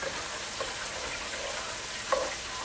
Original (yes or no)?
yes